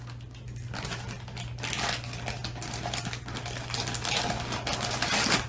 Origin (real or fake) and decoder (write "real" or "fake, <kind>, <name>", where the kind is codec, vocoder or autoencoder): real